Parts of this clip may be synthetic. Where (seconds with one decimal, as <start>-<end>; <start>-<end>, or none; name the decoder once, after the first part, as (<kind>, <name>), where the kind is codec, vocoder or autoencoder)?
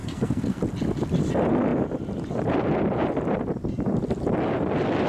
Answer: 0.0-0.6 (codec, SNAC)